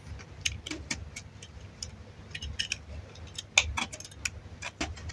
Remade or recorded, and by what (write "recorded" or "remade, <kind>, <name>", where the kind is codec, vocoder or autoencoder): recorded